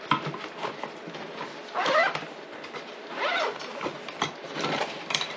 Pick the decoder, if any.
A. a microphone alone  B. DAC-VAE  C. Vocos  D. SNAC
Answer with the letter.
A